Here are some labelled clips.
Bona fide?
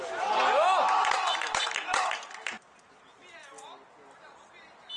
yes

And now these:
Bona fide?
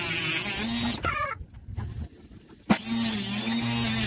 yes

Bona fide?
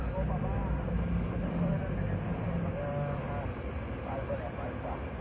yes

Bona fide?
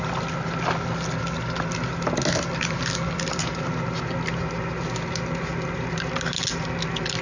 yes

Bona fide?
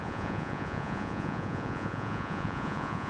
no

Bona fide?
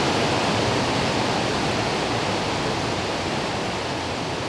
yes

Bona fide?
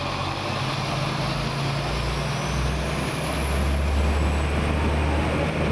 yes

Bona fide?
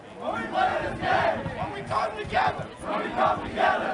yes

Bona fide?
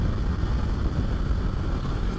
yes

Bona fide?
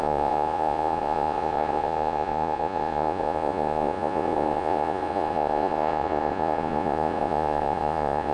no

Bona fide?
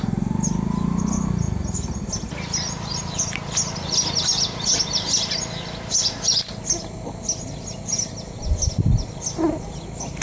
yes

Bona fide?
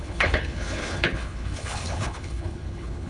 no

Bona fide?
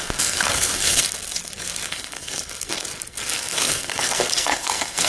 no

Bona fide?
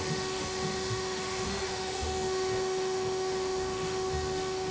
no